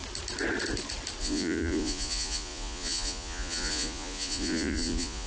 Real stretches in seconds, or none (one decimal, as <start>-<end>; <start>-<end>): 0.0-1.2